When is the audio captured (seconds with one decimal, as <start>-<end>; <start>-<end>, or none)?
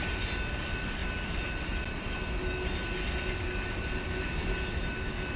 0.0-5.4